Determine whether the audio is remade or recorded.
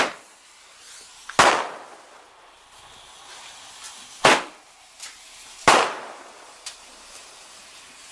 recorded